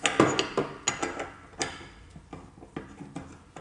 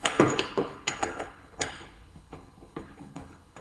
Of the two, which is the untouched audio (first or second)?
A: first